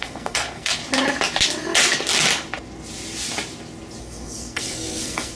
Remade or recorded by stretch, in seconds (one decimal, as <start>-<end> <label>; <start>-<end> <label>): 0.0-0.8 remade; 0.8-4.0 recorded; 4.0-5.4 remade